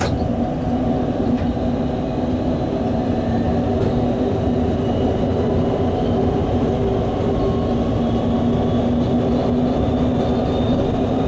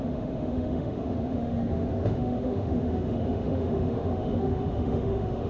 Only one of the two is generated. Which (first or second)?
second